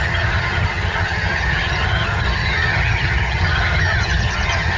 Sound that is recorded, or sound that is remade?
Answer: remade